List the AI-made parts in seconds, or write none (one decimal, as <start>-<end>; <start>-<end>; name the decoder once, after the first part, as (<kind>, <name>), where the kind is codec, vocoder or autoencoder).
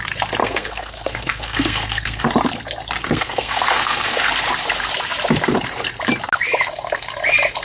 0.4-2.3 (codec, SNAC); 3.0-4.3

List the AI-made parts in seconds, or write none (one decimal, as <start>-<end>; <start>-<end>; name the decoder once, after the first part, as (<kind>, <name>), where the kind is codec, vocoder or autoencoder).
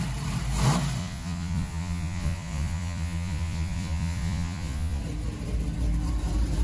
1.0-5.0 (vocoder, Vocos)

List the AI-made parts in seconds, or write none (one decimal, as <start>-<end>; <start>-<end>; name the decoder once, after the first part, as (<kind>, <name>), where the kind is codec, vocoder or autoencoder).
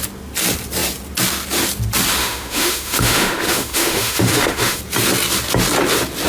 2.2-4.8 (autoencoder, DAC-VAE)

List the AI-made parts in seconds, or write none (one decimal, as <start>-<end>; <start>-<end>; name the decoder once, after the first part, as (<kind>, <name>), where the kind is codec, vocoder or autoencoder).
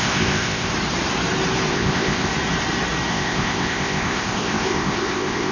0.0-0.7 (codec, ZipCodec); 1.7-2.3; 3.1-5.5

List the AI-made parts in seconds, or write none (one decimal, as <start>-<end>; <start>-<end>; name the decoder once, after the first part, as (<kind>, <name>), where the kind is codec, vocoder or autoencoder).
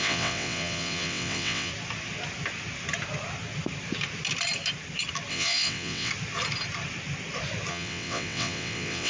0.0-1.7 (vocoder, WaveNeXt); 5.3-6.1; 7.7-9.1